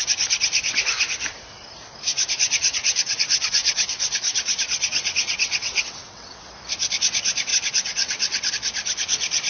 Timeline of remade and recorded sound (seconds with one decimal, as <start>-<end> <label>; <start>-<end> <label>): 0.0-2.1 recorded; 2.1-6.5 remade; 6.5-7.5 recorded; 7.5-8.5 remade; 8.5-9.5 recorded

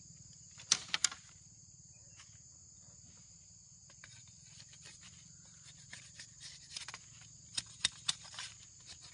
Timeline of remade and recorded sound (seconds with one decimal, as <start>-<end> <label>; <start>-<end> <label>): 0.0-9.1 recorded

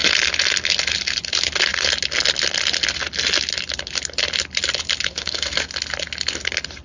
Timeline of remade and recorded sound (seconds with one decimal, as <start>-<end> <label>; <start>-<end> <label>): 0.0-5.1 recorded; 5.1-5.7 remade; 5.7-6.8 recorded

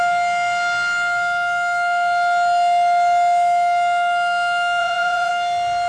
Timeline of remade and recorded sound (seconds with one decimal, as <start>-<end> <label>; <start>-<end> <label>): 0.0-4.8 recorded; 4.8-5.3 remade; 5.3-5.9 recorded